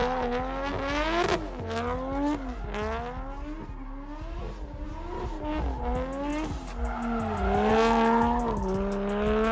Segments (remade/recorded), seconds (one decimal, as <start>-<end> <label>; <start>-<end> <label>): 0.0-9.5 recorded